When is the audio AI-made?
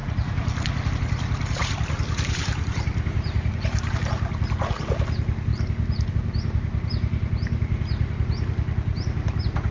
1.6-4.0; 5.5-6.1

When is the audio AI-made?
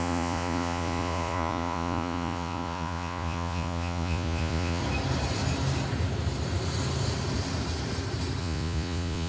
0.0-4.8; 8.4-9.3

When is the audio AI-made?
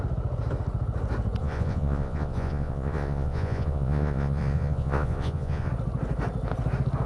1.4-5.7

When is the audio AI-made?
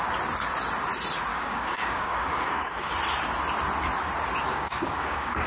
1.3-2.9; 4.5-5.5